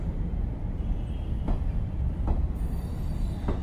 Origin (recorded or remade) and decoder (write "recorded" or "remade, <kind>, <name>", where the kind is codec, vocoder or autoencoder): recorded